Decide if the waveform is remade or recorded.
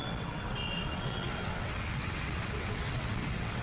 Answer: remade